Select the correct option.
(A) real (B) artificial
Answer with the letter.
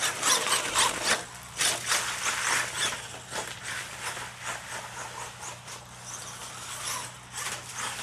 A